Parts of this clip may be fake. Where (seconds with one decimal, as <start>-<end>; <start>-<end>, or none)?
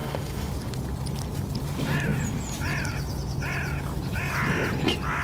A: 0.0-0.5